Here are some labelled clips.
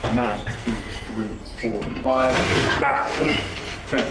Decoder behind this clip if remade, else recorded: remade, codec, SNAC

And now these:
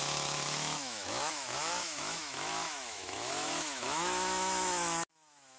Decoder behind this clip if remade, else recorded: remade, autoencoder, DAC-VAE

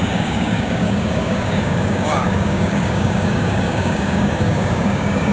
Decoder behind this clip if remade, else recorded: remade, codec, DAC